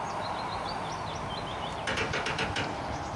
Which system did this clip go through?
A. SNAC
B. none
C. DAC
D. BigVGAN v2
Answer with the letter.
B